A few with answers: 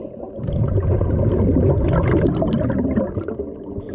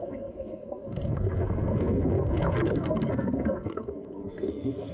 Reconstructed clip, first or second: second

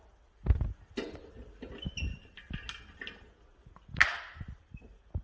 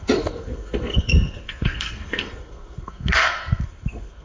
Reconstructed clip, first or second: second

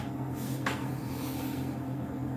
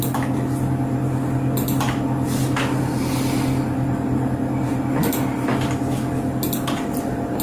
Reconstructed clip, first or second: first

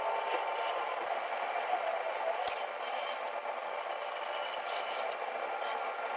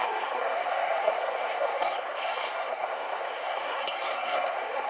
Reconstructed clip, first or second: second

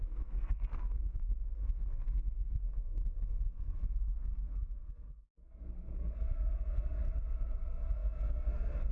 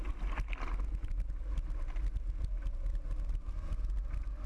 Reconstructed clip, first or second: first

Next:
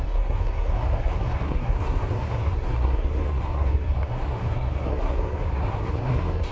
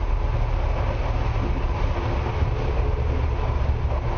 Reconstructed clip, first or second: first